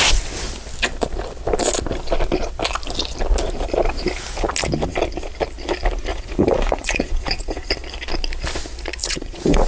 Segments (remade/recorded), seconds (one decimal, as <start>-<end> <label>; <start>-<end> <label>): 0.0-6.1 recorded; 6.1-7.7 remade; 7.7-9.0 recorded; 9.0-9.7 remade